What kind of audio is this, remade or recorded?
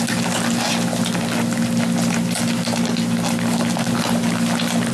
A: recorded